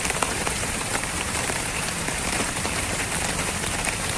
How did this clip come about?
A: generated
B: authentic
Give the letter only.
A